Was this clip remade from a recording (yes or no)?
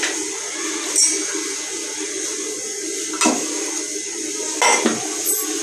no